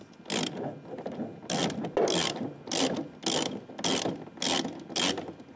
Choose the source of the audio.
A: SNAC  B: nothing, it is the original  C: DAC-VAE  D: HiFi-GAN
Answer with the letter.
B